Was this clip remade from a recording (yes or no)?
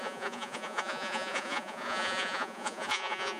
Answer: yes